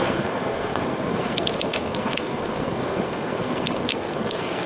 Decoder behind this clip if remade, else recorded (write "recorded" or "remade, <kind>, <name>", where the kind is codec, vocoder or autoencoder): remade, codec, SNAC